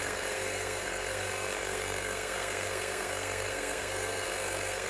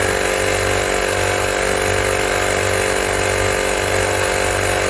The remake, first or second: first